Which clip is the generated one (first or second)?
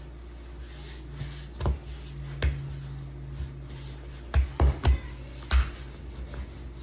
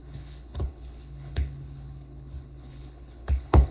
second